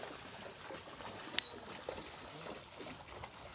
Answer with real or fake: real